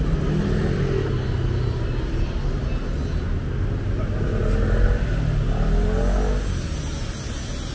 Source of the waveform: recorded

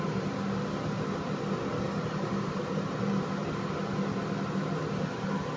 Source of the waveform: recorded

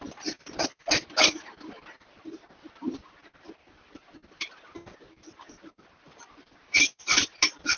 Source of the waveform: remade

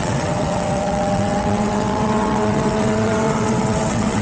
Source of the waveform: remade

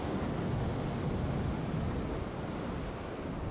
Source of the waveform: recorded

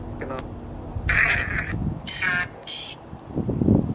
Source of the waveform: recorded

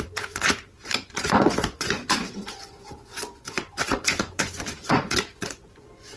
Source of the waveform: remade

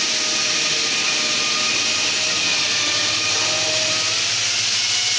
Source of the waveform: recorded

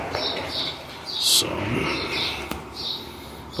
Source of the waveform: recorded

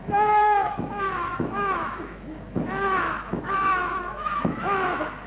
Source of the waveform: remade